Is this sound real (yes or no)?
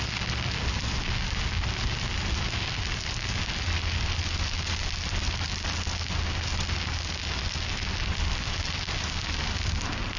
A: yes